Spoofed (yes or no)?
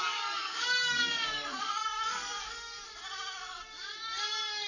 yes